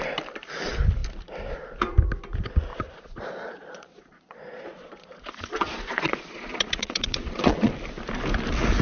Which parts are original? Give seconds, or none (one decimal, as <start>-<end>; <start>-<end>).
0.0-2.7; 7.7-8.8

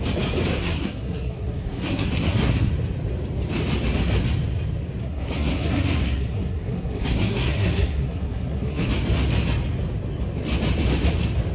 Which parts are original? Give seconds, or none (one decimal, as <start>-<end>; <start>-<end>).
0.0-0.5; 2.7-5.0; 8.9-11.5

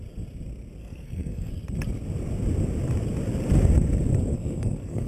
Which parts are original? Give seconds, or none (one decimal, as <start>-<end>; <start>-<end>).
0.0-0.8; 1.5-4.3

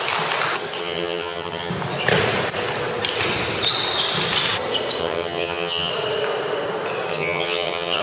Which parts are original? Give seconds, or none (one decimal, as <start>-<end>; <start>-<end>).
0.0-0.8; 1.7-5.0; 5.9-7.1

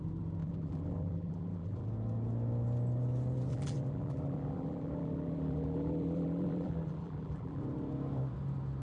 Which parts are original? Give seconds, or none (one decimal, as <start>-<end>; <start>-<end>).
0.0-0.4; 1.9-3.5; 7.6-8.8

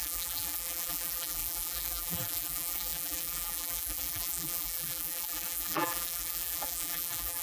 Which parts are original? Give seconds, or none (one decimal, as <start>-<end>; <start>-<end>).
none

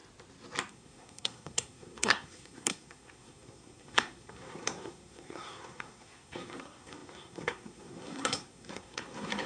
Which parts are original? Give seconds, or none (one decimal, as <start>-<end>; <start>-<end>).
0.0-0.7

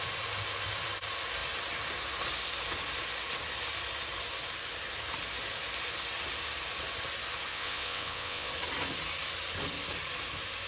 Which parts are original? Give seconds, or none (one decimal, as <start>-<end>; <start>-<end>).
0.0-7.5; 8.5-10.7